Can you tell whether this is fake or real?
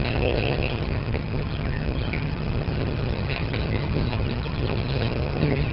fake